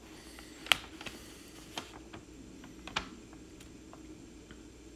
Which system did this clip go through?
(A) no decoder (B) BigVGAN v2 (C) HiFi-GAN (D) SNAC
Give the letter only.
A